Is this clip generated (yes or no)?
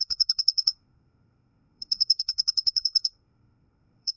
yes